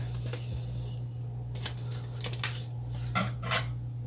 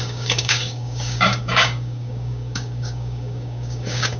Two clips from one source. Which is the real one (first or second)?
first